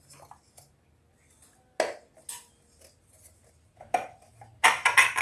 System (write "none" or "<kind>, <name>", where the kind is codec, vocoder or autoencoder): none